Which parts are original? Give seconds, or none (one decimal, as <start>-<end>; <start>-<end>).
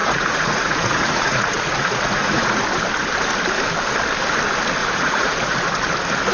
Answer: 2.6-4.8; 5.7-6.3